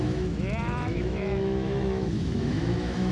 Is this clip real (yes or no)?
no